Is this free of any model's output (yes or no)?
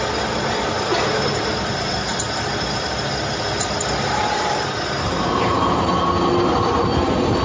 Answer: yes